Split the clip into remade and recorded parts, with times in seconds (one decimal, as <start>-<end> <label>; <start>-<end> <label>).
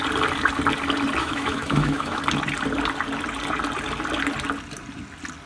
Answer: 0.0-1.2 recorded; 1.2-2.2 remade; 2.2-5.5 recorded